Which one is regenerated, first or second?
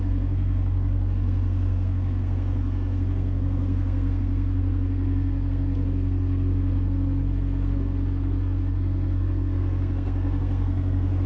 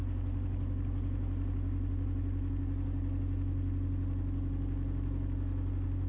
first